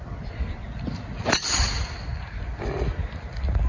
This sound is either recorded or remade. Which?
recorded